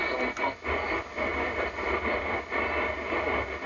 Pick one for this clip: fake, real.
real